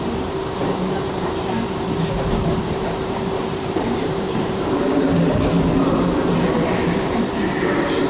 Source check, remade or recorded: remade